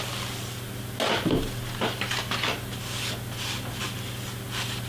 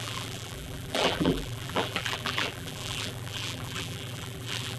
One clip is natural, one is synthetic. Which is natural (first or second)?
first